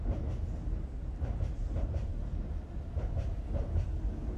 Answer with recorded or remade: recorded